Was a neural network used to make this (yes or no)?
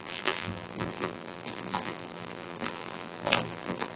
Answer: yes